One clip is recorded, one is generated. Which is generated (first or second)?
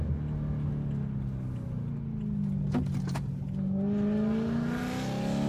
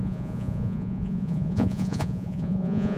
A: second